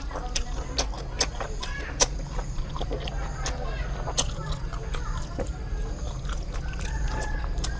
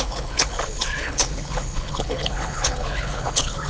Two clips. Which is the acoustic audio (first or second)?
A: first